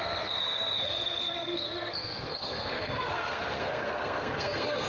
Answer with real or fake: fake